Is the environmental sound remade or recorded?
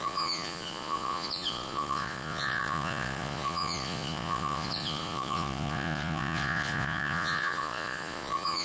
remade